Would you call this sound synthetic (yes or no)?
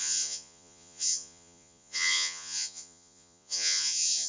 yes